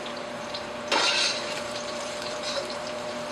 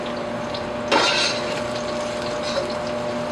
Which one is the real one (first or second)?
second